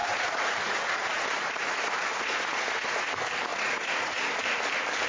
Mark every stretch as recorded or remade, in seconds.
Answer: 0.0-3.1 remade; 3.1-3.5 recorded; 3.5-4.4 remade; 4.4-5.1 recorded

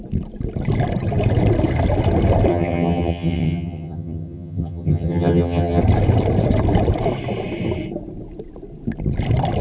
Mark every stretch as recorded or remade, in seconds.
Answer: 0.0-2.5 recorded; 2.5-5.8 remade; 5.8-9.6 recorded

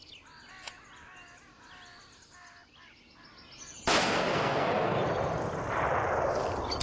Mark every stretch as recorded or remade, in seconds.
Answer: 0.0-4.0 recorded; 4.0-5.0 remade; 5.0-6.8 recorded

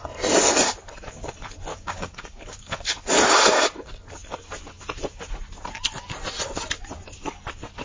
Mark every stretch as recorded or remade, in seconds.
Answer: 0.0-1.7 recorded; 1.7-2.7 remade; 2.7-7.8 recorded

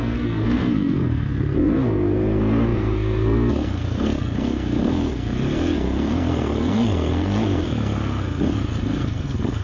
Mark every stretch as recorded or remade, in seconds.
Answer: 0.0-9.6 remade

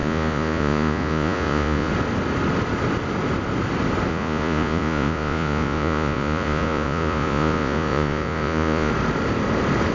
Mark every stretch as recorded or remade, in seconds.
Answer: 0.0-1.9 remade; 1.9-4.1 recorded; 4.1-8.9 remade; 8.9-9.9 recorded

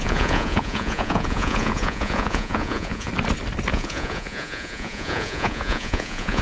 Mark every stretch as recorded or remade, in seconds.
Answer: 0.0-3.1 remade; 3.1-3.7 recorded; 3.7-6.4 remade

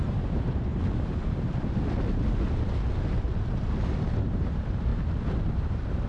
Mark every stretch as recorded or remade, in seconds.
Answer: 0.0-0.7 remade; 0.7-4.2 recorded; 4.2-4.9 remade; 4.9-5.5 recorded; 5.5-6.1 remade